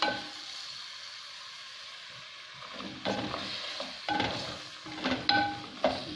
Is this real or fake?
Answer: real